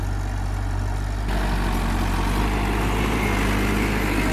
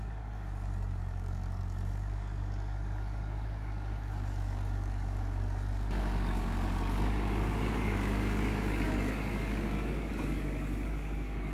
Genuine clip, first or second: first